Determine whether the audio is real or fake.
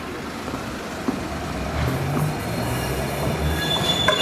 real